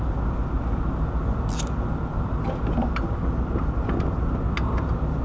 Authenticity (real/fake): real